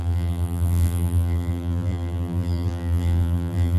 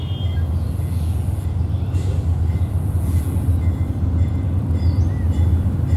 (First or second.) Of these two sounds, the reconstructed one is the first